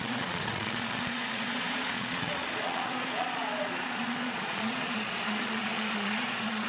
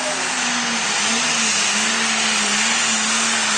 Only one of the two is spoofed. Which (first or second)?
first